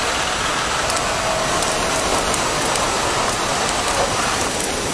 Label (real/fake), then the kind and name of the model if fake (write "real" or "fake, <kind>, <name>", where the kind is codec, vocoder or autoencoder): real